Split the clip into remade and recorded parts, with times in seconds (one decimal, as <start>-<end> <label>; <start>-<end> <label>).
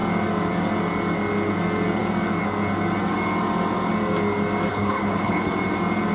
0.0-4.7 recorded; 4.7-5.5 remade; 5.5-6.1 recorded